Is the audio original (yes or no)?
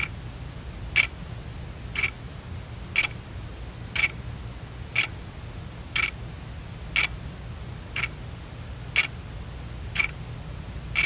yes